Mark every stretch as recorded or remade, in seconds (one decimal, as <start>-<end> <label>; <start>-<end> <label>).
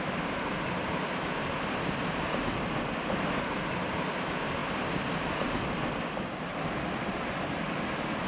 0.0-8.3 recorded